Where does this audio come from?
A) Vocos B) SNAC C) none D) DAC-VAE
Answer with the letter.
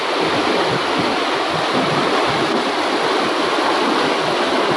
C